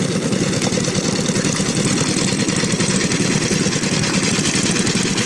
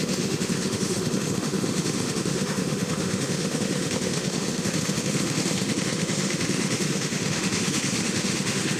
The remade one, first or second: second